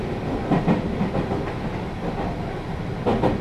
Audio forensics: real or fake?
real